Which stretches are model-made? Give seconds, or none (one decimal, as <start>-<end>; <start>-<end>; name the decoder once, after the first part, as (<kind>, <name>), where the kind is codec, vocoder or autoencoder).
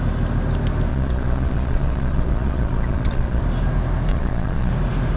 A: 0.9-3.4 (vocoder, Vocos); 4.1-4.7